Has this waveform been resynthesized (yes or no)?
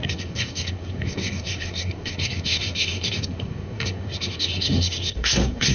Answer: yes